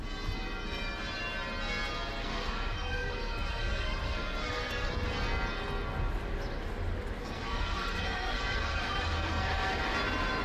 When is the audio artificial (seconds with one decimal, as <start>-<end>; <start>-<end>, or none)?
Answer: 2.2-4.9; 7.2-9.8